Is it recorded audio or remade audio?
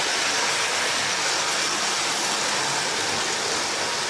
recorded